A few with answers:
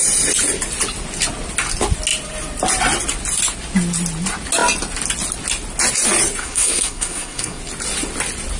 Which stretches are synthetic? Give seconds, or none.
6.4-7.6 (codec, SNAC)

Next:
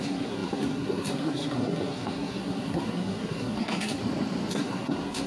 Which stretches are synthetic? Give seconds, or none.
0.0-4.0 (codec, SNAC); 4.5-5.3

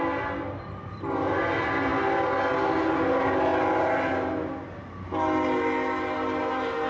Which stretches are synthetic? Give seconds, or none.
none

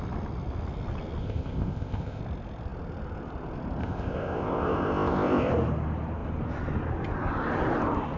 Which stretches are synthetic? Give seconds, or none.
1.2-2.2 (codec, ZipCodec); 3.8-5.5

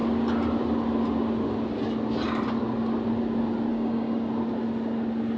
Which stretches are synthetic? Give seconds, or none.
3.7-4.3 (codec, DAC)

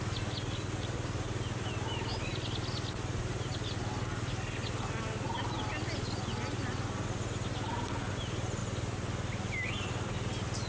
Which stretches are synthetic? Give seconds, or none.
none